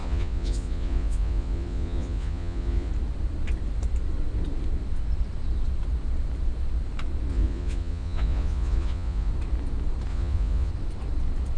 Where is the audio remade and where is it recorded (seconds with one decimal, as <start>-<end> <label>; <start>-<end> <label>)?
0.0-2.9 remade; 2.9-7.3 recorded; 7.3-9.3 remade; 9.3-10.1 recorded; 10.1-10.7 remade; 10.7-11.6 recorded